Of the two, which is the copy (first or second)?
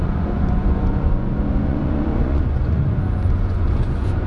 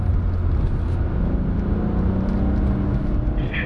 first